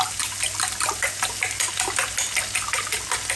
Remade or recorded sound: recorded